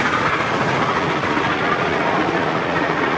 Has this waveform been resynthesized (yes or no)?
yes